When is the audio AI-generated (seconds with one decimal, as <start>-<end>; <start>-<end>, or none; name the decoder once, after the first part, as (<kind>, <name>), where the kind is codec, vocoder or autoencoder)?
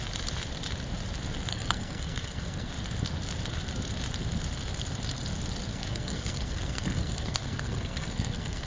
1.5-2.7 (codec, SNAC); 5.7-8.7